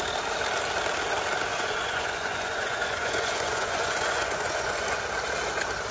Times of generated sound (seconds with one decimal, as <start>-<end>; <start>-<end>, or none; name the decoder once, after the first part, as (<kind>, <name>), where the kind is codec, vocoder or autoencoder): 1.5-5.0 (vocoder, Vocos)